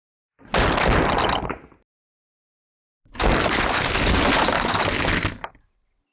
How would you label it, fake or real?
real